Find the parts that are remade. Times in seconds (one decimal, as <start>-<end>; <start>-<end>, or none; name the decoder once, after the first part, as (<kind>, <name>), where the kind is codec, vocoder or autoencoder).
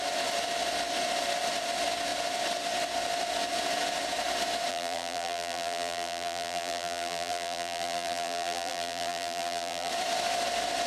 4.7-9.9 (vocoder, BigVGAN v2)